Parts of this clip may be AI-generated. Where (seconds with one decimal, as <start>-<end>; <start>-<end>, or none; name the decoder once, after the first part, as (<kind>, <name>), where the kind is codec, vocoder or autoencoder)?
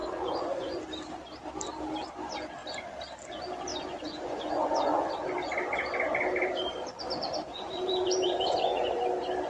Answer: 0.0-0.8 (vocoder, Vocos); 3.7-5.1; 7.5-9.0